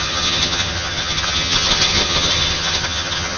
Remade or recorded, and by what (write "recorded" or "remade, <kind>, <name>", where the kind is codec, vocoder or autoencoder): remade, vocoder, HiFi-GAN